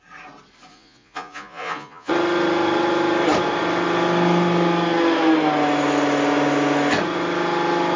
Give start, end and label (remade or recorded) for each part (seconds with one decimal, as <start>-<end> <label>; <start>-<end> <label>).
0.0-0.7 recorded; 0.7-2.1 remade; 2.1-8.0 recorded